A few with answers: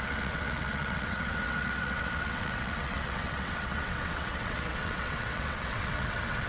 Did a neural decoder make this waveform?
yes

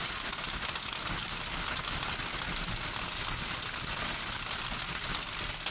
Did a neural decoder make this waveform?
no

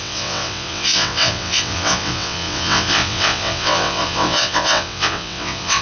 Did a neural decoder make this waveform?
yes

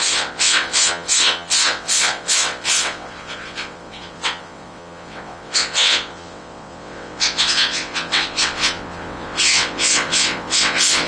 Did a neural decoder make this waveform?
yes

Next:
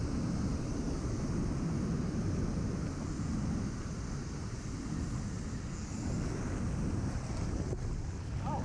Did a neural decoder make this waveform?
no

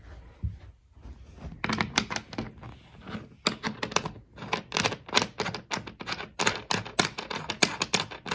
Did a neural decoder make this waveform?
no